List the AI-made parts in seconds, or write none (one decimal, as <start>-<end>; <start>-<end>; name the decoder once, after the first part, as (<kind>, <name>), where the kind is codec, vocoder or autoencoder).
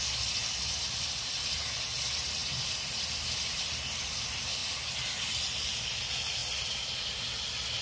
none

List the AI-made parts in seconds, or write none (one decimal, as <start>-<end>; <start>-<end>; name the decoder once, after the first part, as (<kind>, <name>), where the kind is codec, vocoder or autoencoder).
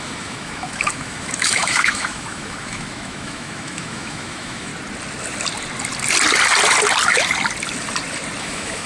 0.0-4.7 (autoencoder, DAC-VAE); 8.4-8.9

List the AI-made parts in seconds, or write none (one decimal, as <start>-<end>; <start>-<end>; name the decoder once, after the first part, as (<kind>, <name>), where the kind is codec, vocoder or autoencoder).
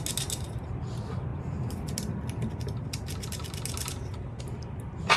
none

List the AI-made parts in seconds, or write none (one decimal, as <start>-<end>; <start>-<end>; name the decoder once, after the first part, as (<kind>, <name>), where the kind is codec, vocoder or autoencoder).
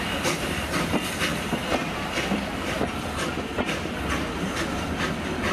none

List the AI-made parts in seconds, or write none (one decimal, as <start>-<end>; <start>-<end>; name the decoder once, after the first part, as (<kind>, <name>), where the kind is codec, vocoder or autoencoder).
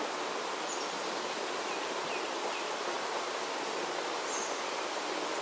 none